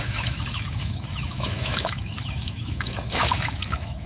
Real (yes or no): no